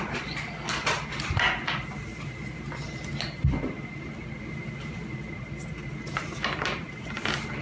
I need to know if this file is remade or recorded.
recorded